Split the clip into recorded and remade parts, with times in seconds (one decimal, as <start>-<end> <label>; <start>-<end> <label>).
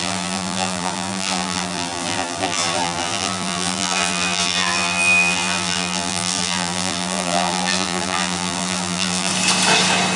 0.0-9.3 remade; 9.3-10.2 recorded